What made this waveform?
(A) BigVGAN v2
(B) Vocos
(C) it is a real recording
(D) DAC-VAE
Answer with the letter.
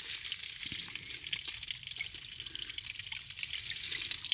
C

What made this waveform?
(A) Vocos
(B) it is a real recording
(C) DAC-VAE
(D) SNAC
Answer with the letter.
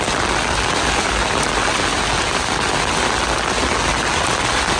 B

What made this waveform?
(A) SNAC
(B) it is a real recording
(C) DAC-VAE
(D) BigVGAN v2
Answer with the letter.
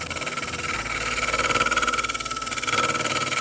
B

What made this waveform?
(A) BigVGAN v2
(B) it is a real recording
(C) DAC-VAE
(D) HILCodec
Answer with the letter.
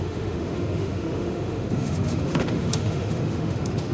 C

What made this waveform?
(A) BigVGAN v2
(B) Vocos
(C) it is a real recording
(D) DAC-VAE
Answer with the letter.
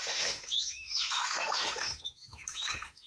D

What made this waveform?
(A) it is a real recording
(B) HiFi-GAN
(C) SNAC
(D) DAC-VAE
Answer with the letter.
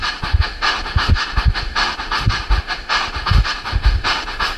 D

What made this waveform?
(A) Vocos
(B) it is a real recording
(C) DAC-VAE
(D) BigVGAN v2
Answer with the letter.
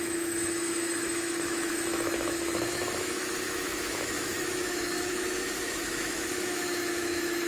C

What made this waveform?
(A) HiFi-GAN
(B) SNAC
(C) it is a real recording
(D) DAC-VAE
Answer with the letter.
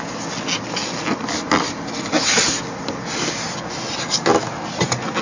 C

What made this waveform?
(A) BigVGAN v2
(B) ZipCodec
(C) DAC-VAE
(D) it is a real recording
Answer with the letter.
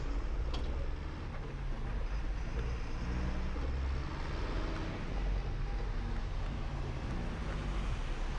D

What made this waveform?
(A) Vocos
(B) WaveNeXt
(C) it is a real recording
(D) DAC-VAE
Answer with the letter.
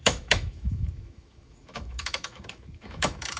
D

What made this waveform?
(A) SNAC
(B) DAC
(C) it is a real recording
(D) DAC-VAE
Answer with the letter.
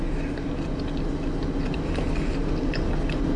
C